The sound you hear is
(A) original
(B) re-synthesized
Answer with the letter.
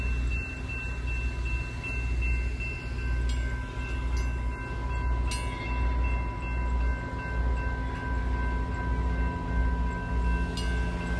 A